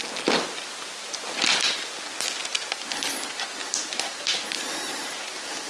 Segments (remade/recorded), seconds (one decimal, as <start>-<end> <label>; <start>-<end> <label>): 0.0-5.7 recorded